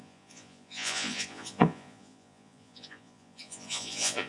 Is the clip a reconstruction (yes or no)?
yes